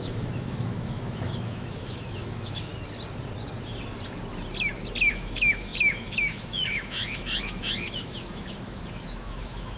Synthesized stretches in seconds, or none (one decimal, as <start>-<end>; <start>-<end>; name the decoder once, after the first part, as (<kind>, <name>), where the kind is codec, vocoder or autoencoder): 0.0-2.7 (autoencoder, DAC-VAE); 5.1-9.8